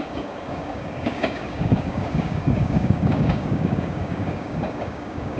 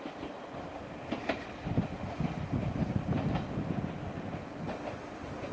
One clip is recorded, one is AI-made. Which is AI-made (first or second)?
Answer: first